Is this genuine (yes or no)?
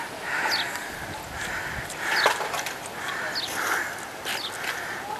yes